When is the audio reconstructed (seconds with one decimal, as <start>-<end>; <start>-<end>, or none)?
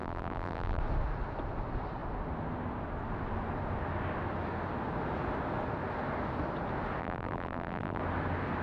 0.0-0.8; 7.0-8.0